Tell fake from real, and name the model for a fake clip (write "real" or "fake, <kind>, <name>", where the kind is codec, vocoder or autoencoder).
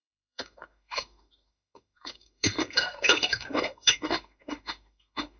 fake, autoencoder, DAC-VAE